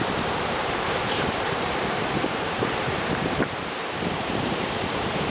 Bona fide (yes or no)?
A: no